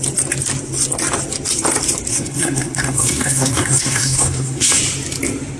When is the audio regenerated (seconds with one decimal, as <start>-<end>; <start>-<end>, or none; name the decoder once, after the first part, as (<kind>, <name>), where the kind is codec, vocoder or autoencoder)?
2.1-4.8 (codec, SNAC)